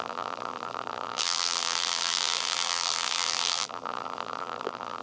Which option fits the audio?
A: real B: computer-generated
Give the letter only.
B